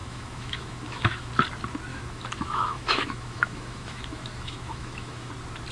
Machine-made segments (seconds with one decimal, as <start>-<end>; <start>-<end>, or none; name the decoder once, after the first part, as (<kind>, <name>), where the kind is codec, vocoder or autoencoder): 0.0-1.3 (autoencoder, DAC-VAE); 1.9-5.3